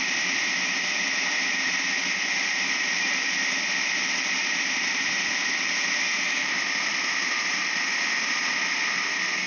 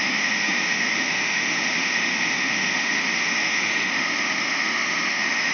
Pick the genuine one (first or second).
first